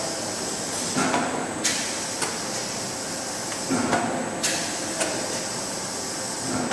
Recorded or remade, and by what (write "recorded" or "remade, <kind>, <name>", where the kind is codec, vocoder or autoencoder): recorded